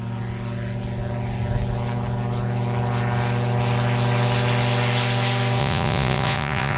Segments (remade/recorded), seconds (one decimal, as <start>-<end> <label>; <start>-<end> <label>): 0.0-5.6 recorded; 5.6-6.8 remade